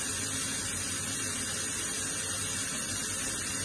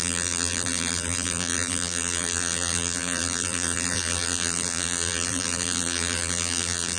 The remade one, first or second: second